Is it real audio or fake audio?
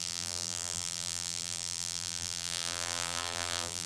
fake